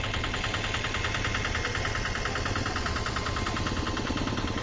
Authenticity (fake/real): real